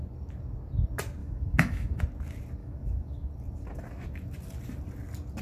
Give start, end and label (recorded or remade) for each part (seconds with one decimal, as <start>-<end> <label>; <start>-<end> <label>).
0.0-1.2 recorded; 1.2-2.0 remade; 2.0-2.6 recorded; 2.6-3.3 remade; 3.3-5.4 recorded